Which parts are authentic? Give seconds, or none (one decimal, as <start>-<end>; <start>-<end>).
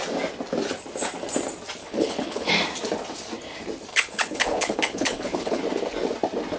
0.0-1.8; 2.5-3.9; 5.6-6.6